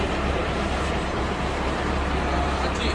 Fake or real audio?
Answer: fake